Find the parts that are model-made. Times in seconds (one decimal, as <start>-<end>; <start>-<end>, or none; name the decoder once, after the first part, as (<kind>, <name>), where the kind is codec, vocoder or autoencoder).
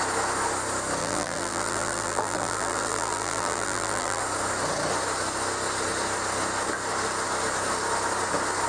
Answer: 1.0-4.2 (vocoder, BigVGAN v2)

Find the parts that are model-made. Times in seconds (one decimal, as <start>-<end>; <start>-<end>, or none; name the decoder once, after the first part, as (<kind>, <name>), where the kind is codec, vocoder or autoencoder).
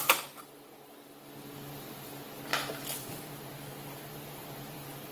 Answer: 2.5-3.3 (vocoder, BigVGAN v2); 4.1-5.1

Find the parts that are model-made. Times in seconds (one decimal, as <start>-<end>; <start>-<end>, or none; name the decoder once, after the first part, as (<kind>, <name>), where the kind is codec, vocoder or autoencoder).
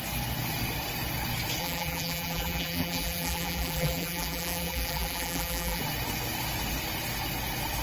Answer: 1.6-5.8 (vocoder, BigVGAN v2)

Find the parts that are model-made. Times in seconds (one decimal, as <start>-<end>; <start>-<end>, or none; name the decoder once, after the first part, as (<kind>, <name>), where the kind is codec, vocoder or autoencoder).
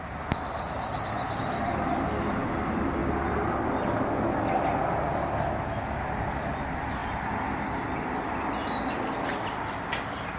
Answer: none